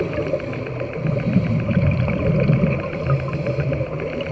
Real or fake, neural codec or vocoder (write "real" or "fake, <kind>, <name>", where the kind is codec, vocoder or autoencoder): real